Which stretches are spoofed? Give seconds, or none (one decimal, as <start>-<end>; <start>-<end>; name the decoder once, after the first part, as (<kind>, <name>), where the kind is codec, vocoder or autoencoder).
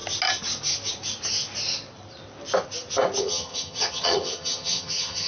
3.2-5.3 (vocoder, HiFi-GAN)